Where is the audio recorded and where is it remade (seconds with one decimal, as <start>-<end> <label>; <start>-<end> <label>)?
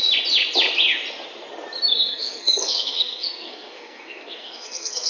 0.0-1.9 recorded; 1.9-5.1 remade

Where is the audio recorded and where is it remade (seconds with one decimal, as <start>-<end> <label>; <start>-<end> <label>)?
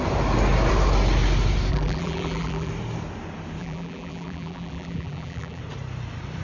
0.0-1.7 recorded; 1.7-2.7 remade; 2.7-3.6 recorded; 3.6-5.6 remade; 5.6-6.4 recorded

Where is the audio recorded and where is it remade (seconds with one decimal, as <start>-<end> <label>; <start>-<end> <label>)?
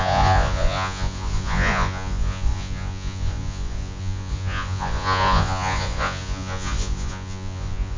0.0-8.0 remade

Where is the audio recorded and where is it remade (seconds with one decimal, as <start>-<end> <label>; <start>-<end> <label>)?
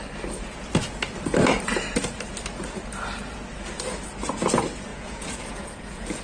0.0-4.9 recorded; 4.9-6.2 remade